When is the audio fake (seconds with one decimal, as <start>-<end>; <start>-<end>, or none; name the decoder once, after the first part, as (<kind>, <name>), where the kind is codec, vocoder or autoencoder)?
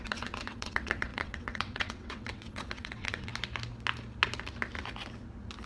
0.0-3.3 (vocoder, WaveNeXt)